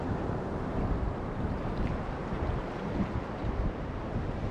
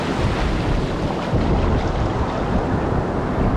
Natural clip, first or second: second